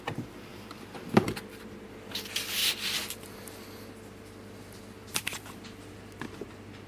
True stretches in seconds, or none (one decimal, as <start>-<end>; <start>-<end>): 0.0-0.5; 1.3-6.9